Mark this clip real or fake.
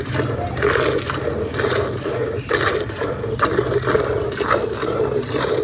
real